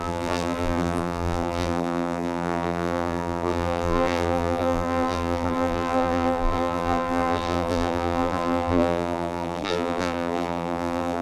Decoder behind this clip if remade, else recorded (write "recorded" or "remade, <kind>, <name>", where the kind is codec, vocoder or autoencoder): remade, vocoder, BigVGAN v2